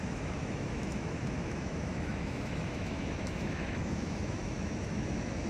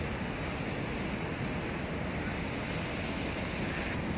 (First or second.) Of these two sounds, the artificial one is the first